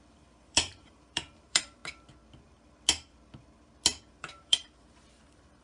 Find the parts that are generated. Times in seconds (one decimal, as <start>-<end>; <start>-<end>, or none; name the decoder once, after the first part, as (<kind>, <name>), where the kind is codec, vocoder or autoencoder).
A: 0.0-1.8 (vocoder, BigVGAN v2); 4.1-5.6